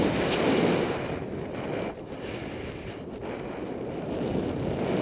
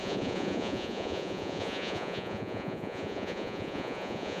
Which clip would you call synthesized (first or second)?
second